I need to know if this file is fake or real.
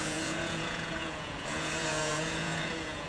fake